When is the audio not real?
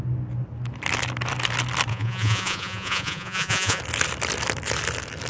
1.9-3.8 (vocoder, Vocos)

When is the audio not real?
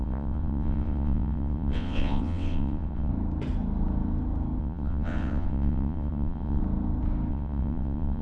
0.0-3.1 (vocoder, WaveNeXt); 4.6-6.6; 7.3-8.2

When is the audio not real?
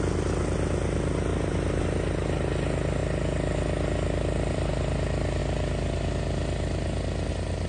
1.3-1.8 (vocoder, BigVGAN v2); 3.0-4.7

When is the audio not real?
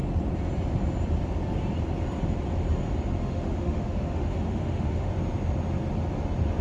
3.2-5.1 (autoencoder, DAC-VAE)